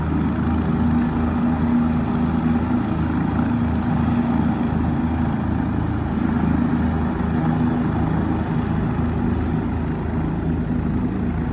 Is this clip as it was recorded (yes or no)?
yes